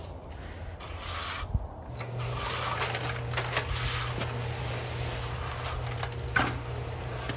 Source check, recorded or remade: recorded